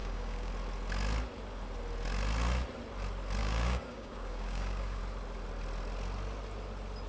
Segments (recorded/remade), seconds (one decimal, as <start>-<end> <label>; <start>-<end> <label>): 0.0-0.5 remade; 0.5-3.4 recorded; 3.4-5.0 remade; 5.0-7.1 recorded